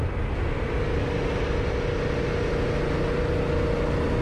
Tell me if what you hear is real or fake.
real